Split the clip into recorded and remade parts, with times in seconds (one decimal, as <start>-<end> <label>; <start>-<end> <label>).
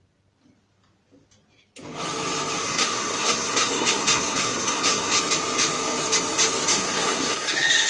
0.0-2.6 recorded; 2.6-5.2 remade; 5.2-6.7 recorded; 6.7-7.9 remade